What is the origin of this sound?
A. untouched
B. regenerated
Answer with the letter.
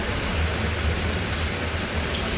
A